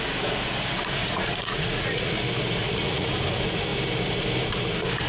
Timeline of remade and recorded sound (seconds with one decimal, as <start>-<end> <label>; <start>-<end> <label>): 0.0-1.0 recorded; 1.0-2.1 remade; 2.1-2.6 recorded; 2.6-3.1 remade; 3.1-5.1 recorded